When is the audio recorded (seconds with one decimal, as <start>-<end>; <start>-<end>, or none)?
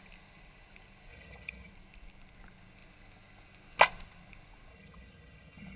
0.0-1.1; 1.7-4.7